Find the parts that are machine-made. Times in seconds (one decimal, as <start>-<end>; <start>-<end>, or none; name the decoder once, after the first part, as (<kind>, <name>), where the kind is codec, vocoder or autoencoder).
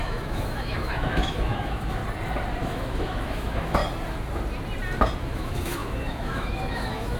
0.0-2.0 (autoencoder, DAC-VAE); 2.6-3.8; 5.2-7.2